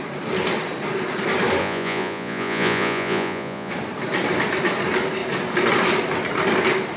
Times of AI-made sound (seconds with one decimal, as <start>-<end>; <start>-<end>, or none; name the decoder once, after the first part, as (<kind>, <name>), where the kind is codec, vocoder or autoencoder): 1.6-3.7 (vocoder, Vocos)